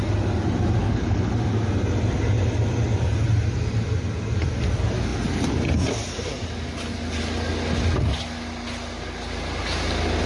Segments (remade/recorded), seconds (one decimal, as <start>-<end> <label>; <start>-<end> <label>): 0.0-0.8 recorded; 0.8-1.3 remade; 1.3-10.3 recorded